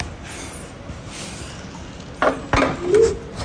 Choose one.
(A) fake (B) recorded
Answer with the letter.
B